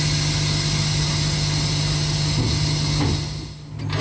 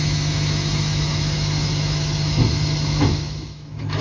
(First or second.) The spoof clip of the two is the second